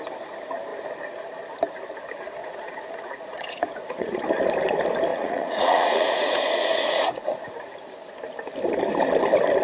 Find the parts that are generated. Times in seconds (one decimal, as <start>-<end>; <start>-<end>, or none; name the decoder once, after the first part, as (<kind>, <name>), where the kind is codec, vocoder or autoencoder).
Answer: 2.4-4.2 (vocoder, Vocos); 5.1-7.5